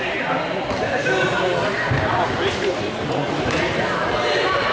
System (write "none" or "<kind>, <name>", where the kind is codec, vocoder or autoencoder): none